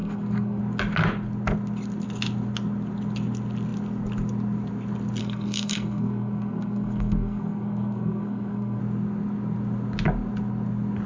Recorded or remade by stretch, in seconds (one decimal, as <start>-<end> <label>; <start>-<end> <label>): 0.0-0.6 remade; 0.6-5.2 recorded; 5.2-8.8 remade; 8.8-11.1 recorded